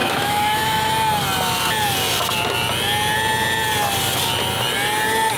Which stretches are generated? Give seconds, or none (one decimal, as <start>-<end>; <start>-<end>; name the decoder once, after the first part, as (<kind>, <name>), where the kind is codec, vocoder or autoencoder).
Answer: 0.0-0.9 (autoencoder, DAC-VAE)